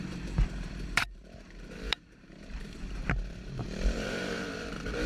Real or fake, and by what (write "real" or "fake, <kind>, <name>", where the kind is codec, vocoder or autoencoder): fake, vocoder, BigVGAN v2